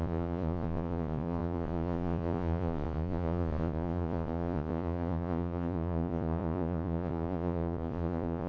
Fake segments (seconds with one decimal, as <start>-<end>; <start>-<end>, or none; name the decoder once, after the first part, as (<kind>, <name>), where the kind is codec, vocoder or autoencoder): 0.0-8.5 (vocoder, Vocos)